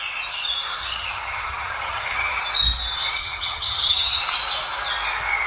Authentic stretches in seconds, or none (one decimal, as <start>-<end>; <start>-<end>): 0.0-0.8; 2.4-3.2; 4.2-5.5